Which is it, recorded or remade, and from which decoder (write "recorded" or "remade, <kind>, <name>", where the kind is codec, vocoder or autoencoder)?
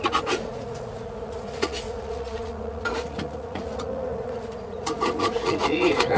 remade, vocoder, Vocos